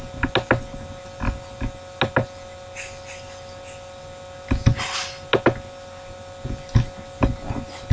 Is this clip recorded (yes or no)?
yes